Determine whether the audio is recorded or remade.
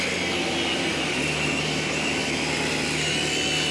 recorded